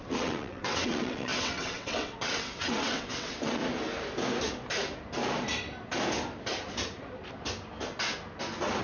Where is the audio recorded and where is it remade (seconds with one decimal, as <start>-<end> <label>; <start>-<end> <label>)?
0.0-3.6 remade; 3.6-8.8 recorded